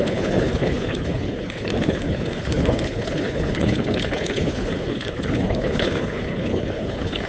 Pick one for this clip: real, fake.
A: fake